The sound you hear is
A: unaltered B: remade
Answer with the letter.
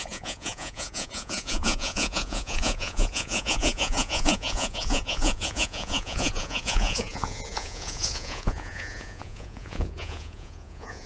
B